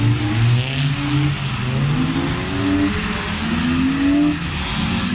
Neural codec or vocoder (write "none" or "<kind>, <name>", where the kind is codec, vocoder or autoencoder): none